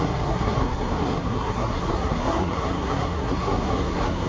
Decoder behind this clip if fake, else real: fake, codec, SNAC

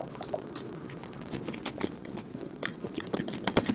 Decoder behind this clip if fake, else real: fake, vocoder, WaveNeXt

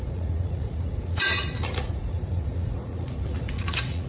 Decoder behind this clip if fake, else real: fake, vocoder, Vocos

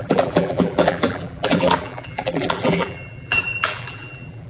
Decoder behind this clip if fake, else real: fake, vocoder, BigVGAN v2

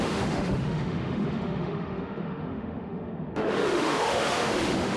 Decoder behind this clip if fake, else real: fake, autoencoder, DAC-VAE